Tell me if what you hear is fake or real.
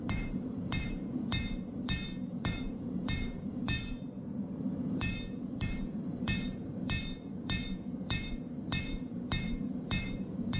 fake